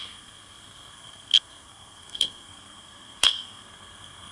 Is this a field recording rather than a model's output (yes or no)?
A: no